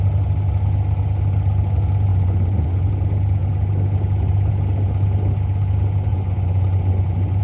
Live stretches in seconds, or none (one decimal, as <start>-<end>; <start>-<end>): 0.0-2.1; 2.9-6.1